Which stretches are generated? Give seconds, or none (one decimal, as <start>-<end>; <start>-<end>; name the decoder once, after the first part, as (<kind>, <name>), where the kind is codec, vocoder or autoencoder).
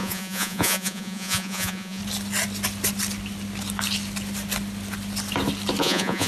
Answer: 0.0-2.0 (vocoder, Vocos); 5.8-6.3